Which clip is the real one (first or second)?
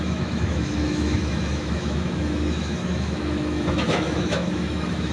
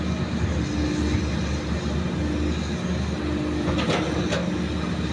second